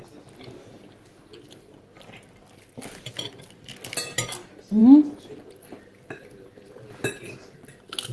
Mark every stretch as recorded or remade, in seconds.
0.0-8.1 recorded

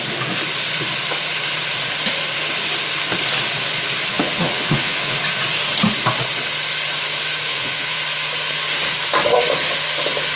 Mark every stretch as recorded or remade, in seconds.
0.0-4.1 recorded; 4.1-5.2 remade; 5.2-7.5 recorded; 7.5-8.0 remade; 8.0-10.4 recorded

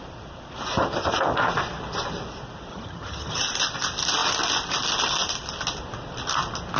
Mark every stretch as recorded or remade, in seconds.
0.0-2.7 recorded; 2.7-3.4 remade; 3.4-6.8 recorded

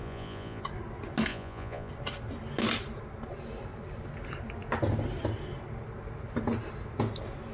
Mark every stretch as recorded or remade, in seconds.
0.0-0.6 remade; 0.6-1.3 recorded; 1.3-1.9 remade; 1.9-7.5 recorded